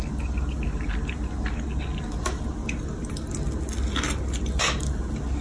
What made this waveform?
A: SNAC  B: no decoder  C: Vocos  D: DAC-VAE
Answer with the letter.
B